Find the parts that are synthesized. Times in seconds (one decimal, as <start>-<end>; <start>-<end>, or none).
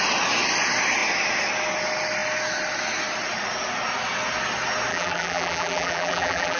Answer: 4.9-6.6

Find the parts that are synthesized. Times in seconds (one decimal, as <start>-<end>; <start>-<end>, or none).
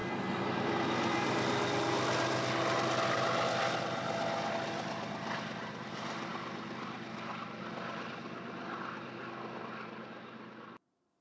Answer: none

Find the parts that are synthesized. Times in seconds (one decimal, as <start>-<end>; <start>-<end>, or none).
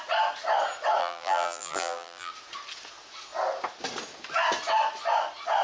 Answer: 1.0-2.3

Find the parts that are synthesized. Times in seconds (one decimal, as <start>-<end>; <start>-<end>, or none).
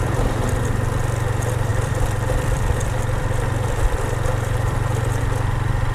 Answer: 1.7-5.2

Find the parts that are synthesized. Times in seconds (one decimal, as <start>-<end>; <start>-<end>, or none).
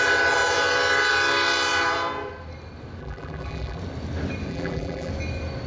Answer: 3.0-3.8; 4.5-5.1